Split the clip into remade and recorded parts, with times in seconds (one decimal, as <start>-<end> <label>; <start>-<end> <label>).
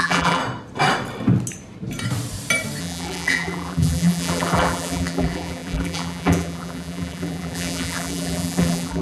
0.0-0.4 remade; 0.4-2.8 recorded; 2.8-9.0 remade